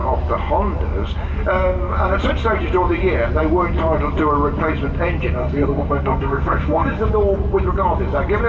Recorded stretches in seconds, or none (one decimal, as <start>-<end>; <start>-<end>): 0.0-5.4; 7.1-8.5